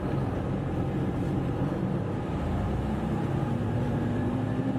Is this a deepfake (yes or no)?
yes